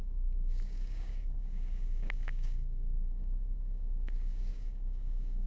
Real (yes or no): no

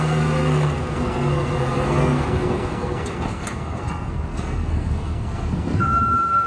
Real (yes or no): no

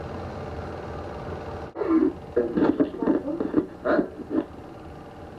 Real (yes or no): yes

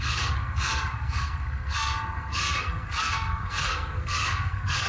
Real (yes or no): no